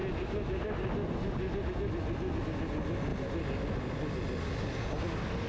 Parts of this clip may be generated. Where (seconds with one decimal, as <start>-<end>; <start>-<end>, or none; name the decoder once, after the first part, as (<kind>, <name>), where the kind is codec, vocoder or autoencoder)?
none